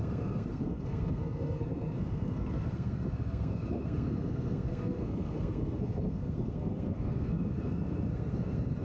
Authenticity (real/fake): fake